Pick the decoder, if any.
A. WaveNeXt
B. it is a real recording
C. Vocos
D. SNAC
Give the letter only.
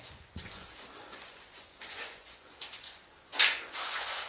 C